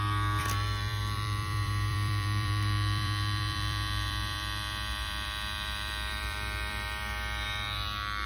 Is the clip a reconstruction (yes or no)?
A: yes